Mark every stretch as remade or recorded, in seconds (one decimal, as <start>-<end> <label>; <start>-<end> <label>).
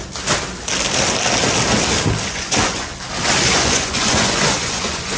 0.0-2.3 recorded; 2.3-2.9 remade; 2.9-3.5 recorded; 3.5-5.2 remade